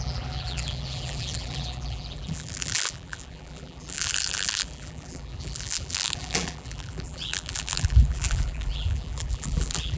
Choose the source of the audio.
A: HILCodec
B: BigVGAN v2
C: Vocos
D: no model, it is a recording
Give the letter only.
B